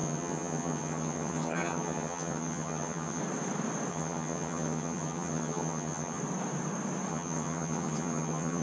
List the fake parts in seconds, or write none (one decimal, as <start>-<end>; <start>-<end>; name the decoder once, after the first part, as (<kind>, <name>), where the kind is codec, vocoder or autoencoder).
0.0-3.2 (vocoder, HiFi-GAN); 3.9-6.2; 7.1-8.6